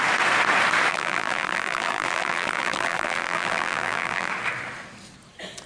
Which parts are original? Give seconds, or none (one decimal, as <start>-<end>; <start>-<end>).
0.0-0.9; 4.3-5.7